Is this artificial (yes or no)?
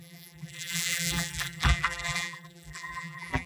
yes